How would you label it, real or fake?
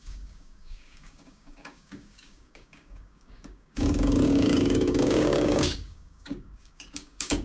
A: fake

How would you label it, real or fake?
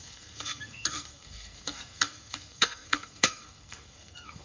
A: fake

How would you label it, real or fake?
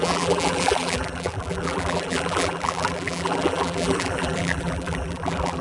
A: fake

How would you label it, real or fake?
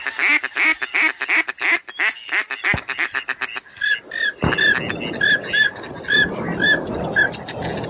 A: real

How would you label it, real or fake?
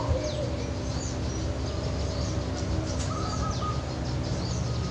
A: real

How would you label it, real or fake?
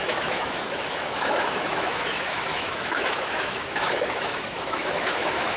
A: fake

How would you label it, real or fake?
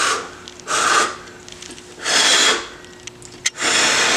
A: real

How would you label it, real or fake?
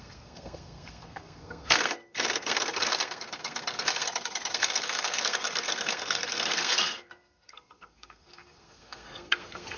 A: fake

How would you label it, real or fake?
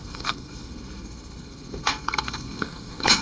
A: fake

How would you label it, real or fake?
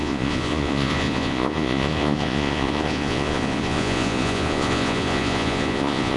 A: fake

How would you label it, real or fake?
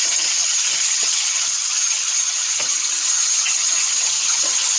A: fake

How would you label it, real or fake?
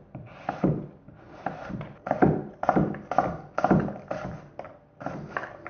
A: real